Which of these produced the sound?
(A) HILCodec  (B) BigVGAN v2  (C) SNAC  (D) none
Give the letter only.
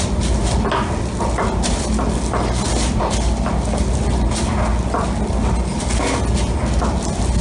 D